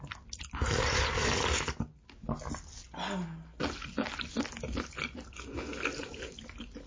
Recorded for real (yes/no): yes